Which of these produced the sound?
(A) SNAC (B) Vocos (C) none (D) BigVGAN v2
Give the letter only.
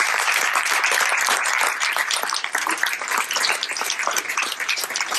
D